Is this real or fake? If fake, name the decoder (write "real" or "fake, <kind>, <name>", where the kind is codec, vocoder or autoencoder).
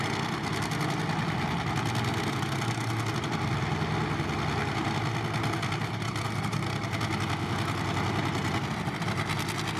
real